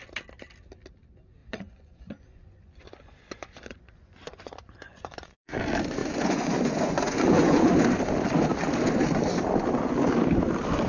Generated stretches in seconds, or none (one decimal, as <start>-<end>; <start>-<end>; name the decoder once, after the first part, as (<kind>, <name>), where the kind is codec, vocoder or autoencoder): 1.4-5.6 (vocoder, Vocos); 6.0-7.8